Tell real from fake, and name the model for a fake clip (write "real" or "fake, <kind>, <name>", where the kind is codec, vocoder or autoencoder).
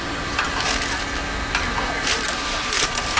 real